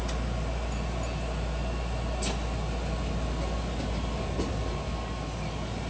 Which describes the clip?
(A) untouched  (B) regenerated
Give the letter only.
A